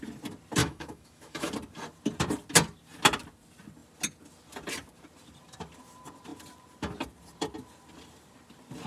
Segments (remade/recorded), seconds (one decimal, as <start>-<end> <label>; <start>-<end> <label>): 0.0-0.6 recorded; 0.6-1.5 remade; 1.5-8.9 recorded